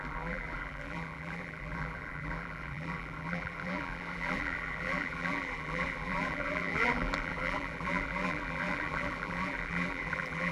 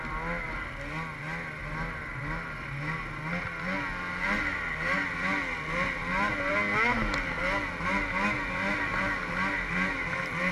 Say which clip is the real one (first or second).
second